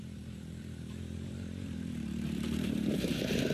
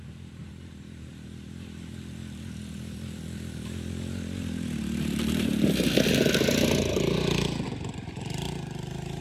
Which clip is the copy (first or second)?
first